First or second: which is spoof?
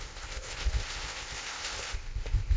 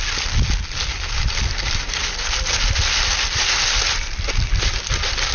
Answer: first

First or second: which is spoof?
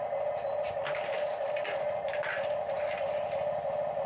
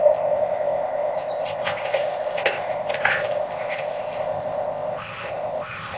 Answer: second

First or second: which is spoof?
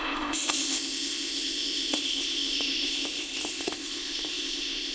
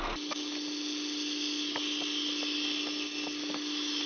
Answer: first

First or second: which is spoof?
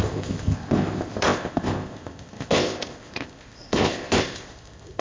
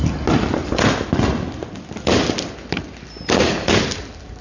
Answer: first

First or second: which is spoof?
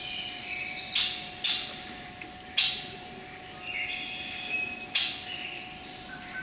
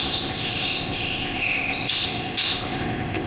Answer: second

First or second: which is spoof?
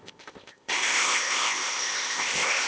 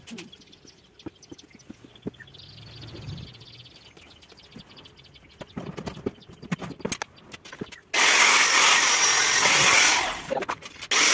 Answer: first